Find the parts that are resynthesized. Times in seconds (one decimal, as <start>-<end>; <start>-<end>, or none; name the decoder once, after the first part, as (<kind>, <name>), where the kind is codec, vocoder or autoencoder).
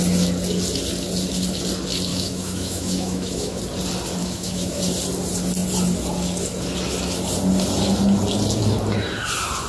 2.1-3.6 (autoencoder, DAC-VAE); 4.2-4.8